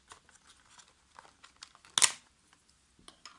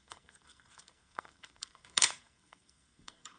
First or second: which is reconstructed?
second